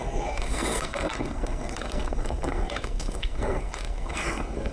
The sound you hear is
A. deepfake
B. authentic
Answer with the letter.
A